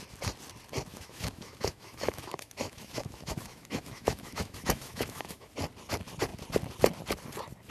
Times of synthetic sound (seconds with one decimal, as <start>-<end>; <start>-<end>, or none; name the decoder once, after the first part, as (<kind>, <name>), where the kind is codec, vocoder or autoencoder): 0.9-5.5 (autoencoder, DAC-VAE)